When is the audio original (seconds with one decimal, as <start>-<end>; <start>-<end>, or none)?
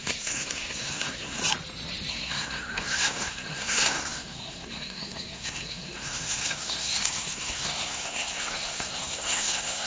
1.4-2.1